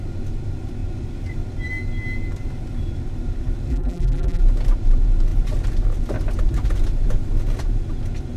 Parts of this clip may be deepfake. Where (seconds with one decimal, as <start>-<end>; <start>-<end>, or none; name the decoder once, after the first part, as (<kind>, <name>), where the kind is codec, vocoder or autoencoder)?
3.7-4.4 (vocoder, BigVGAN v2)